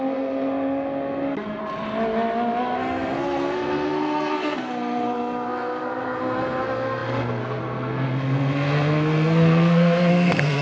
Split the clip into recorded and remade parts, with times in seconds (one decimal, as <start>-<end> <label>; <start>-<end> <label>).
0.0-1.6 remade; 1.6-2.6 recorded; 2.6-10.6 remade

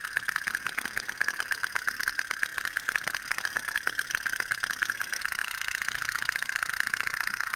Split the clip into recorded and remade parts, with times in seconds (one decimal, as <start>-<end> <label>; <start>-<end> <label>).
0.0-7.6 remade

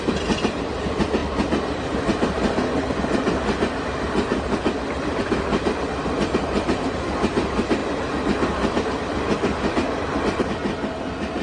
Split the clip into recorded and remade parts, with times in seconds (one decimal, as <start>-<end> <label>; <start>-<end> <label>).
0.0-11.4 recorded

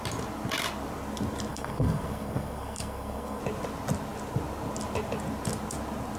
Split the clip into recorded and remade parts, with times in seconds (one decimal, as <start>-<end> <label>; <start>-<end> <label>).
0.0-1.5 recorded; 1.5-3.4 remade; 3.4-6.2 recorded